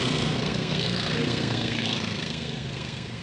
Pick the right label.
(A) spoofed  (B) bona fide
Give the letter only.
A